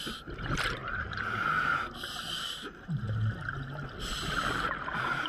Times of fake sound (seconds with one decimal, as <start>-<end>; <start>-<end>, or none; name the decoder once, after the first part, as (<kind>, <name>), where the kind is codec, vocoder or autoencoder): none